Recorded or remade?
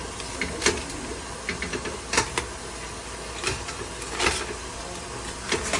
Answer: recorded